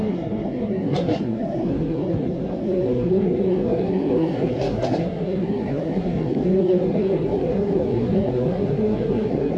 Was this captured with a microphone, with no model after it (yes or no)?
no